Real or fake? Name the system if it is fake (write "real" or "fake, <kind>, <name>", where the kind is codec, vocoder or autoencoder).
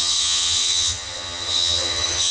fake, vocoder, HiFi-GAN